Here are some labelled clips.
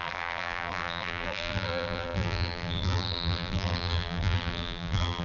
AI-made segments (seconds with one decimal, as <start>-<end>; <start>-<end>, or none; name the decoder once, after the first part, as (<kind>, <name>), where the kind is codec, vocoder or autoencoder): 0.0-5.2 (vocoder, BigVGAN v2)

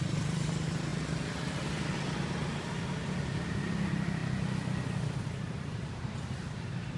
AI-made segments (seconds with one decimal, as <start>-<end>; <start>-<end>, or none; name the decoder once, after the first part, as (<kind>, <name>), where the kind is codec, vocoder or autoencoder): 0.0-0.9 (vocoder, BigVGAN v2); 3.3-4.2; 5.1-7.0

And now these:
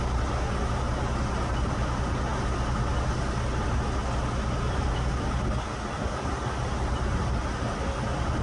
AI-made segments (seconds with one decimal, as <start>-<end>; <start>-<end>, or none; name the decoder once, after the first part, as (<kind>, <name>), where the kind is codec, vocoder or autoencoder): none

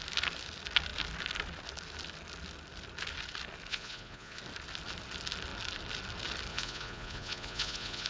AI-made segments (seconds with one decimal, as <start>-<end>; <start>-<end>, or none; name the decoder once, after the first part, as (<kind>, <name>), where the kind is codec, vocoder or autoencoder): 3.7-4.4 (vocoder, Vocos); 6.5-8.1

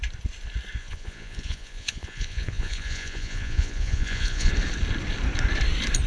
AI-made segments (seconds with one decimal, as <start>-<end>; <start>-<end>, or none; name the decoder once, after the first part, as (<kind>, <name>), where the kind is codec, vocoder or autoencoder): 0.8-4.5 (vocoder, Vocos)

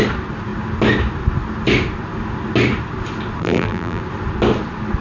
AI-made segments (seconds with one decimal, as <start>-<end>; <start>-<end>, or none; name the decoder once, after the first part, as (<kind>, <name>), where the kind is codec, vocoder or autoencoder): 3.4-4.0 (vocoder, BigVGAN v2)